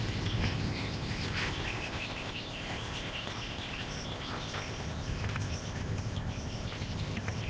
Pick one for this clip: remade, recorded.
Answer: remade